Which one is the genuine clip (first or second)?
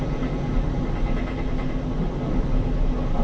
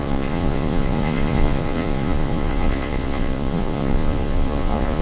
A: first